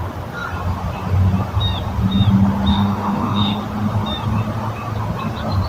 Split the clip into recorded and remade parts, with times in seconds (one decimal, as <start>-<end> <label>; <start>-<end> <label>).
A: 0.0-2.7 recorded; 2.7-3.6 remade; 3.6-5.7 recorded